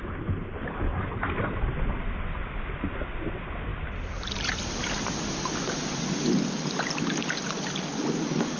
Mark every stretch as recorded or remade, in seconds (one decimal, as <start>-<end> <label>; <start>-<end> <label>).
0.0-0.9 recorded; 0.9-2.6 remade; 2.6-3.7 recorded; 3.7-5.7 remade; 5.7-8.6 recorded